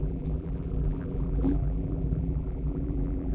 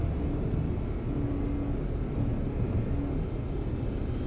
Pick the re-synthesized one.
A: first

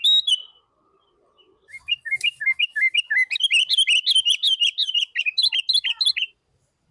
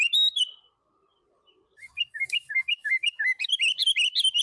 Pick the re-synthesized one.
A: second